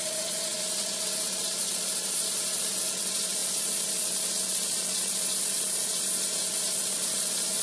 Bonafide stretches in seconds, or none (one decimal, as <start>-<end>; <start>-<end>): none